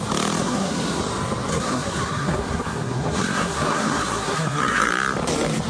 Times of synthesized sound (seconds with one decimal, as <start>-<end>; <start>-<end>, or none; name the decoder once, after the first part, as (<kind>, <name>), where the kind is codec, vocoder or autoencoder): 0.4-1.0 (codec, SNAC); 1.5-4.9